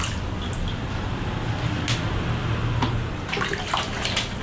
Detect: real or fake real